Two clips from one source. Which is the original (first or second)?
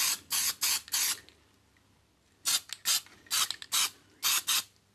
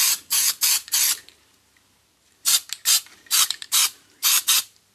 first